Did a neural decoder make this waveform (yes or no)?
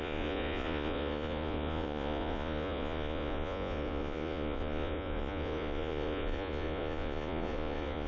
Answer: yes